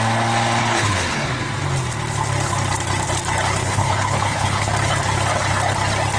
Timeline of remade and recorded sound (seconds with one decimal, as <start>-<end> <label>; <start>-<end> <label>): 0.0-0.6 recorded; 0.6-1.3 remade; 1.3-3.6 recorded; 3.6-4.7 remade; 4.7-6.2 recorded